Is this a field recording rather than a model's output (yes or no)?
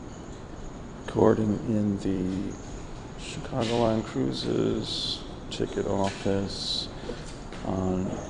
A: no